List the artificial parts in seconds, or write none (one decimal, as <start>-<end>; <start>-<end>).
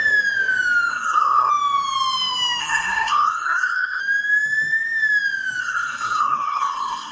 0.9-1.5; 2.6-4.0; 5.6-7.1